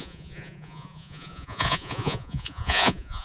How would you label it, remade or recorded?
remade